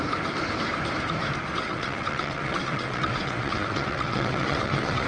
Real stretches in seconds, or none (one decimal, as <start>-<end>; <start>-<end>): 0.0-1.6